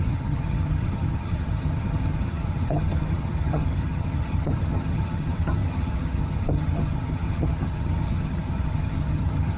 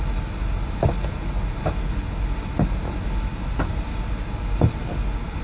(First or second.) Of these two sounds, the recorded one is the second